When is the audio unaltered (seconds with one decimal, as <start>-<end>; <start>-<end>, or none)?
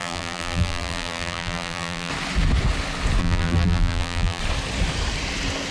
2.1-3.2; 4.4-5.7